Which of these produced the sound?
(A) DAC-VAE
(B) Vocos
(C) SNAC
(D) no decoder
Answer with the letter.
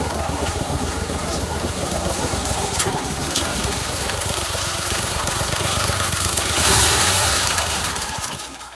C